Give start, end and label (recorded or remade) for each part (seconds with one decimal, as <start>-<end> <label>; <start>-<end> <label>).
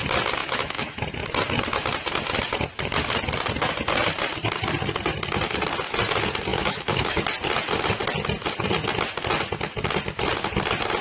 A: 0.0-0.4 recorded; 0.4-1.0 remade; 1.0-6.5 recorded; 6.5-7.2 remade; 7.2-11.0 recorded